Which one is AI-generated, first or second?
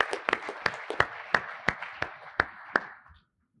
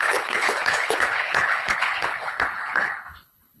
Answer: second